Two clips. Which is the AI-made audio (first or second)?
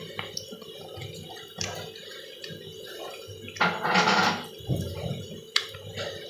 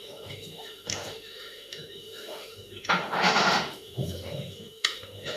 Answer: second